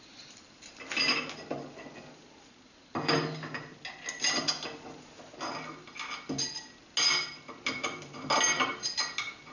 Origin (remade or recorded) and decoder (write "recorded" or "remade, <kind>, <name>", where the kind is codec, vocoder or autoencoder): recorded